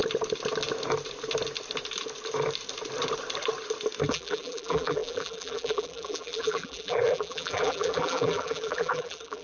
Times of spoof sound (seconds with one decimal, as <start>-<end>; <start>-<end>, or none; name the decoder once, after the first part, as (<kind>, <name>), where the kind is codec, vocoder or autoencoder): 4.1-9.4 (vocoder, BigVGAN v2)